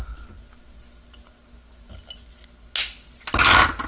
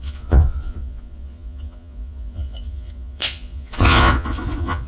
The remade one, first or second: second